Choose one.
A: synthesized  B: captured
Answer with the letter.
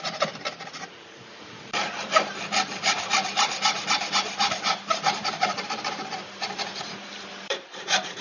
A